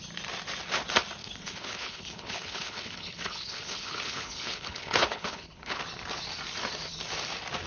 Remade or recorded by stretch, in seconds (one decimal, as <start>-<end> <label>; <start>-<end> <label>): 0.0-1.2 recorded; 1.2-5.8 remade; 5.8-7.7 recorded